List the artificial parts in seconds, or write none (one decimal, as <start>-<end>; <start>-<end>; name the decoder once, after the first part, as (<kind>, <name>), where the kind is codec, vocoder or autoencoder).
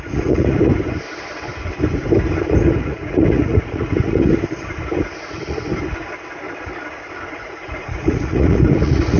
0.0-0.7 (vocoder, Vocos); 2.8-4.3; 5.3-5.7; 7.3-9.2